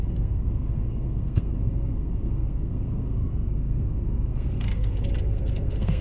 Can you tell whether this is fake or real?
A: fake